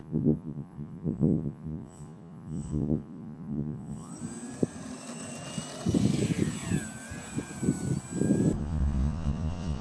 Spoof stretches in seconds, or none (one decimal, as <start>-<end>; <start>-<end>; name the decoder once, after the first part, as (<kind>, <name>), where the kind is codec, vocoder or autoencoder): 0.0-4.1 (vocoder, Vocos); 8.6-9.8